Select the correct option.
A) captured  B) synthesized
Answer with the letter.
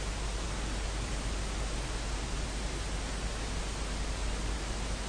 A